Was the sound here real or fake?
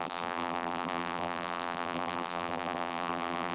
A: fake